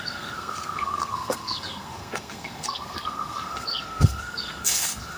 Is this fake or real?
fake